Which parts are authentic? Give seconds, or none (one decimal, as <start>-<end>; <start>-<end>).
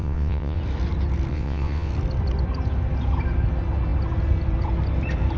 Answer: 0.6-1.3; 1.9-5.4